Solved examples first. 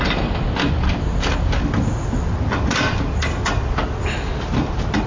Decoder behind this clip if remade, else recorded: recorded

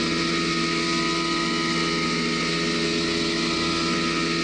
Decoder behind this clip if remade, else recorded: recorded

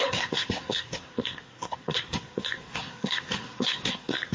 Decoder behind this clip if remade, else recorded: remade, codec, SNAC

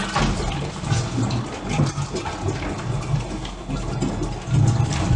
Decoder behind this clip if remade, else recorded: recorded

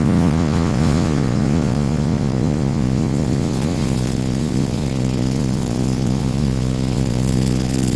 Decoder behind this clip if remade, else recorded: remade, vocoder, Vocos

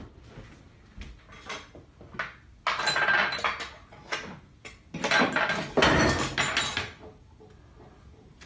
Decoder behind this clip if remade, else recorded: recorded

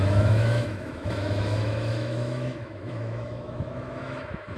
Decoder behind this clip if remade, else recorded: remade, autoencoder, DAC-VAE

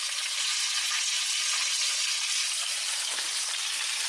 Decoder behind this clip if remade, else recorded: remade, vocoder, BigVGAN v2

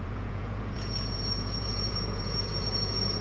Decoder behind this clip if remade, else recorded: remade, vocoder, Vocos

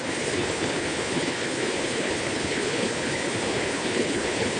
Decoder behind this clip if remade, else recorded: remade, codec, HILCodec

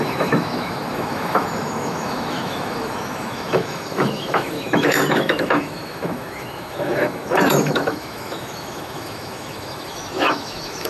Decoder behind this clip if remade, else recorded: remade, autoencoder, DAC-VAE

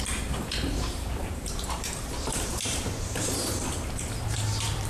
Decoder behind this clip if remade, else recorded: remade, vocoder, BigVGAN v2